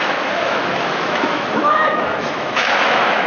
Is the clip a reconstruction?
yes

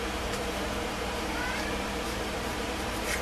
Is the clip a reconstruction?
yes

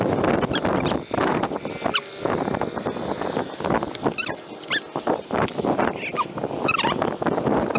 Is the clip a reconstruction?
no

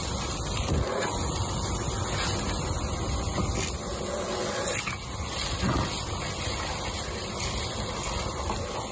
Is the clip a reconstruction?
no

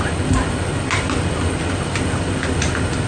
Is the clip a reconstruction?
no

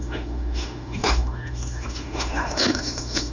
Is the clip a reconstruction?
yes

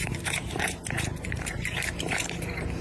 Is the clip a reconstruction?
yes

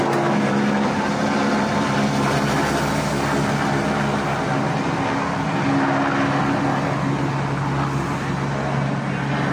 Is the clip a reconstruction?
no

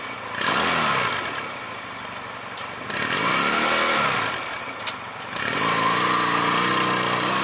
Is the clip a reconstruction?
no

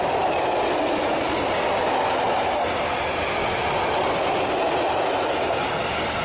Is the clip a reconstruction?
no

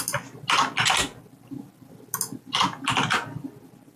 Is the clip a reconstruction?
no